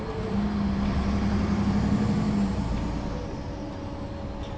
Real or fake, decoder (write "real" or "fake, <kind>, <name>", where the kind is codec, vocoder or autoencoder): real